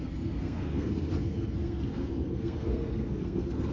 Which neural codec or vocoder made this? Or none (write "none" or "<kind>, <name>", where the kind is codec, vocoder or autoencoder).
codec, SNAC